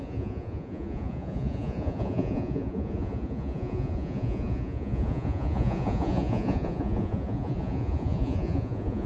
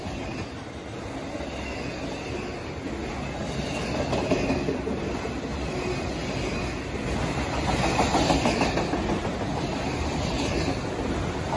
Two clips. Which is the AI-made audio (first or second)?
first